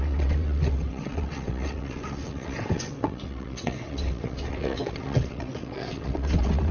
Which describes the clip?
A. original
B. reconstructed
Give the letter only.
B